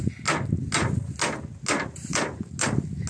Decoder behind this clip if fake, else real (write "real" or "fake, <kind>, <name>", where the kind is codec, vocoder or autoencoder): real